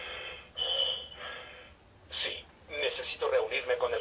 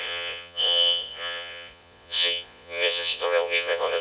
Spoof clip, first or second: second